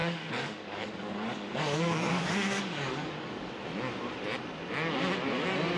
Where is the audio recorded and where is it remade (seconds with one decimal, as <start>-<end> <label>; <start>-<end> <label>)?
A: 0.0-3.5 remade; 3.5-5.8 recorded